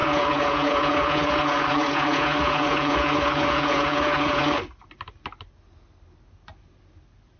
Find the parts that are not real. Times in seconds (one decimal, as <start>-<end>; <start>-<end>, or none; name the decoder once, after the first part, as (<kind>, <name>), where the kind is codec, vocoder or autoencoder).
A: 0.0-4.4 (vocoder, Vocos)